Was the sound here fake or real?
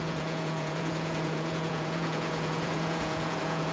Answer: fake